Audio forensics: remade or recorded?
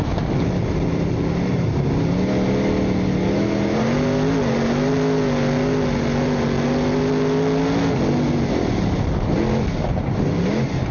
recorded